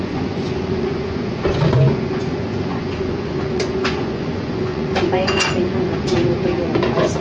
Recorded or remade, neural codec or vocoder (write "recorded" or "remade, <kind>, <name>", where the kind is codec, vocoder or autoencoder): remade, vocoder, Vocos